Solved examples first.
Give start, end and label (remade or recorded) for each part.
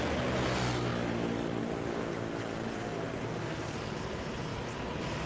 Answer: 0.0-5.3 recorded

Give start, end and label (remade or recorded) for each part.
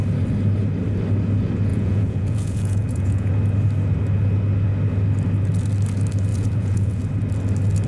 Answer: 0.0-1.7 recorded; 1.7-3.3 remade; 3.3-6.3 recorded; 6.3-7.0 remade; 7.0-7.9 recorded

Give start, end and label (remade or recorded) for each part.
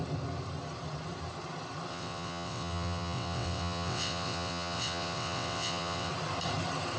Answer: 0.0-1.9 recorded; 1.9-6.1 remade; 6.1-7.0 recorded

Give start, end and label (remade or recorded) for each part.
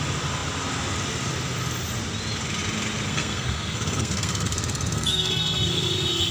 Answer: 0.0-3.1 recorded; 3.1-6.3 remade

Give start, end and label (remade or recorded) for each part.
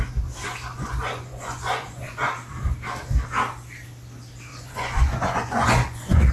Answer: 0.0-0.7 recorded; 0.7-2.3 remade; 2.3-4.5 recorded; 4.5-6.3 remade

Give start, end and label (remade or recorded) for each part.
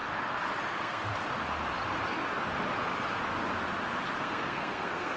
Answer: 0.0-0.7 recorded; 0.7-1.1 remade; 1.1-4.2 recorded; 4.2-5.2 remade